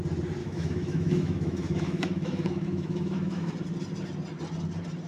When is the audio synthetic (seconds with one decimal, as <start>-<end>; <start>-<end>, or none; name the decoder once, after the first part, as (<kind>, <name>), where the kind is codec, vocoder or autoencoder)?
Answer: 0.4-3.5 (autoencoder, DAC-VAE)